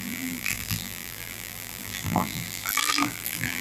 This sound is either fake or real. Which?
fake